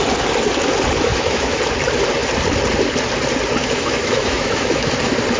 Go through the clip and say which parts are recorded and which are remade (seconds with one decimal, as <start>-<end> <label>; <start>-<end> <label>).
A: 0.0-1.1 recorded; 1.1-1.6 remade; 1.6-3.6 recorded; 3.6-4.9 remade; 4.9-5.4 recorded